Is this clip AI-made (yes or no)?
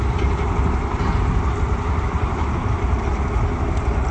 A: no